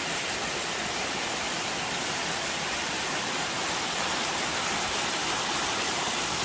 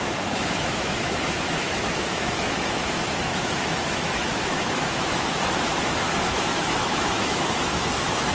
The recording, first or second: first